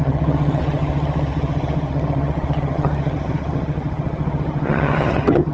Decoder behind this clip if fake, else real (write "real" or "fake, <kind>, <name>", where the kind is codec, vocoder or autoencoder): fake, vocoder, HiFi-GAN